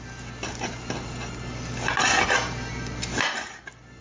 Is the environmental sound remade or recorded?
recorded